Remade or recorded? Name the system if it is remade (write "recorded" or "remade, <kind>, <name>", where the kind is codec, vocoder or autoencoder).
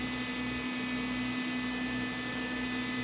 recorded